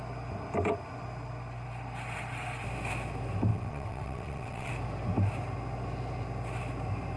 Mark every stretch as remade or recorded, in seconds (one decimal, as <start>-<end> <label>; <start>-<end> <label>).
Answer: 0.0-3.5 recorded; 3.5-4.7 remade; 4.7-7.2 recorded